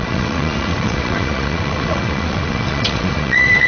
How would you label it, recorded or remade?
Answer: remade